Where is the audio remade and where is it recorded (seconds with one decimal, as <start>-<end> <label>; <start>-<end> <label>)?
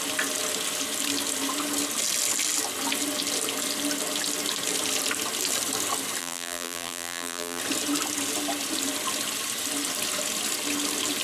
0.0-6.2 recorded; 6.2-7.6 remade; 7.6-11.2 recorded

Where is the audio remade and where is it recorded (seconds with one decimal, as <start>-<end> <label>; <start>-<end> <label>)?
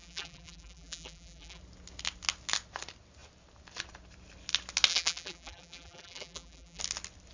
0.0-1.6 remade; 1.6-4.9 recorded; 4.9-6.8 remade; 6.8-7.3 recorded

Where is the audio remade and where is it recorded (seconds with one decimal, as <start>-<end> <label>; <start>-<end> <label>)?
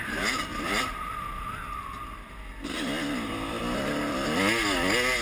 0.0-0.5 recorded; 0.5-3.6 remade; 3.6-5.2 recorded